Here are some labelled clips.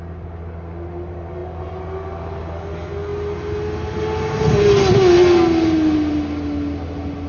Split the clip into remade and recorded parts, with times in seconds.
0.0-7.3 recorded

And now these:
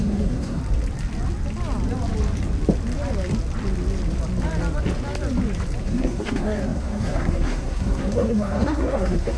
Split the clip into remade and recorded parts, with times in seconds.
0.0-0.6 remade; 0.6-5.8 recorded; 5.8-9.4 remade

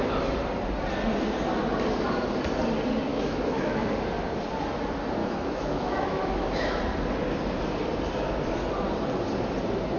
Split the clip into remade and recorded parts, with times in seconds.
0.0-3.1 recorded; 3.1-3.9 remade; 3.9-5.2 recorded; 5.2-6.8 remade; 6.8-10.0 recorded